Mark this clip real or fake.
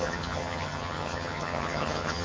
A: fake